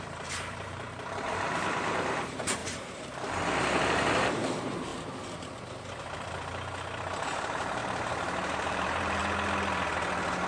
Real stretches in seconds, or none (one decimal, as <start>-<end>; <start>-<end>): 4.9-7.2; 7.8-8.6; 9.2-10.5